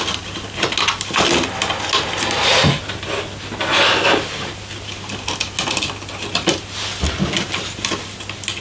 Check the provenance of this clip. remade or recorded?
recorded